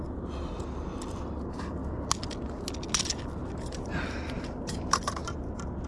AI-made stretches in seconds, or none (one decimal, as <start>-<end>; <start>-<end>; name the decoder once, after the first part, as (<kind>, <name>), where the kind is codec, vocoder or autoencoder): 3.4-5.5 (vocoder, BigVGAN v2)

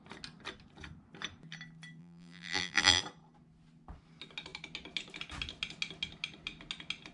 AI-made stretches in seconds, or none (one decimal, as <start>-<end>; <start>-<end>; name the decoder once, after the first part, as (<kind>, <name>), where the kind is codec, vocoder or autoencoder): 2.0-3.0 (vocoder, BigVGAN v2)

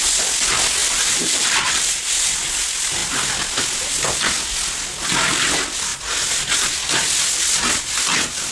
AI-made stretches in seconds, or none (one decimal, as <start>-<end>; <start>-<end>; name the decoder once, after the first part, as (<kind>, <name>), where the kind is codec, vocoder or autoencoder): 0.8-2.1 (vocoder, BigVGAN v2)

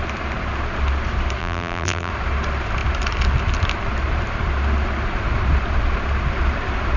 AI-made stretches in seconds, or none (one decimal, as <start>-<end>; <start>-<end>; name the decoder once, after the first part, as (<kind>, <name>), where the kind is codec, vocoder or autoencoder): 1.4-2.1 (vocoder, BigVGAN v2)

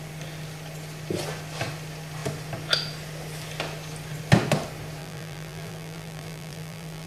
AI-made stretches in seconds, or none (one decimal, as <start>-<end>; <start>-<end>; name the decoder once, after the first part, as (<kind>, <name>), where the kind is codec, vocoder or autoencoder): 5.0-7.1 (vocoder, BigVGAN v2)

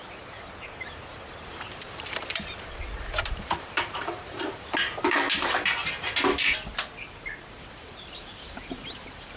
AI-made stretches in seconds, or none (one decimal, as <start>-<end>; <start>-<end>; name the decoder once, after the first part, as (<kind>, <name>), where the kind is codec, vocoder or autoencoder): 0.0-5.8 (vocoder, BigVGAN v2); 7.6-9.4